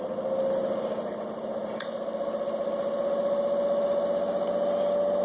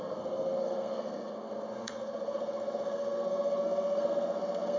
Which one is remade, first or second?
second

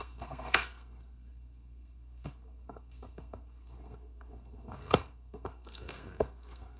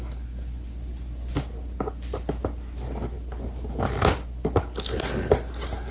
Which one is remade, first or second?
first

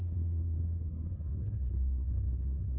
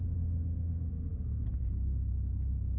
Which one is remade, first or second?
first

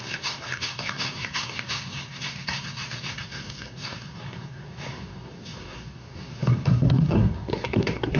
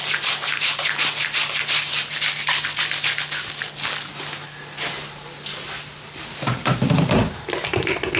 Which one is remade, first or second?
first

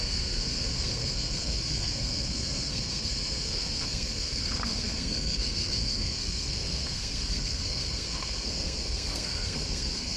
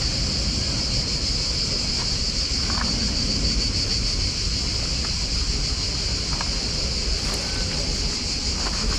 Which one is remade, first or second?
first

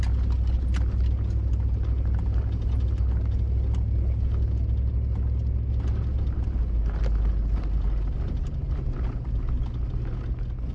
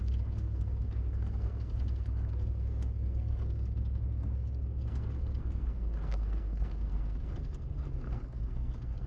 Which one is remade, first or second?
second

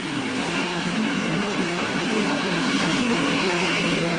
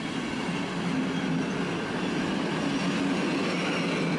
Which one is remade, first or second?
first